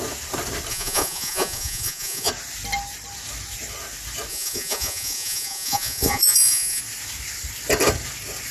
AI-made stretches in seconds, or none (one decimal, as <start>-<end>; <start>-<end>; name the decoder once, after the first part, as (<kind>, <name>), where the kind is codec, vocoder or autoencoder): 0.7-2.3 (vocoder, Vocos); 4.3-6.8